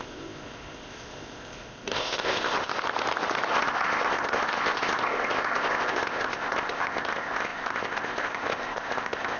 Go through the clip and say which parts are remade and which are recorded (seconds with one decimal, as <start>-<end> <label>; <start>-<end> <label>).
0.0-2.7 remade; 2.7-3.5 recorded; 3.5-9.4 remade

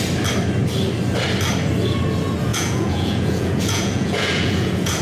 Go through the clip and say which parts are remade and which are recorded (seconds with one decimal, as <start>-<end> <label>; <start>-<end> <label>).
0.0-2.5 recorded; 2.5-5.0 remade

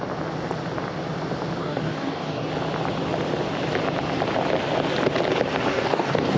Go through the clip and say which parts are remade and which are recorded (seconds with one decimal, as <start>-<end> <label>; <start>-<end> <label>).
0.0-1.6 recorded; 1.6-2.5 remade; 2.5-5.7 recorded; 5.7-6.4 remade

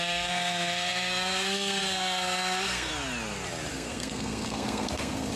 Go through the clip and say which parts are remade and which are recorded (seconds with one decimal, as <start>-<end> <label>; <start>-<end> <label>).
0.0-2.9 remade; 2.9-3.7 recorded; 3.7-5.4 remade

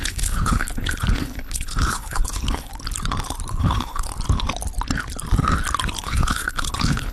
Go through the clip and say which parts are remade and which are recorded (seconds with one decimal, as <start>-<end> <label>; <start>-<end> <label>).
0.0-2.7 remade; 2.7-3.6 recorded; 3.6-4.1 remade; 4.1-6.0 recorded; 6.0-7.1 remade